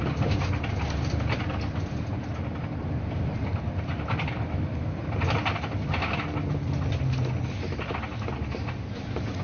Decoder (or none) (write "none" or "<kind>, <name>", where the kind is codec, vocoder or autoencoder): none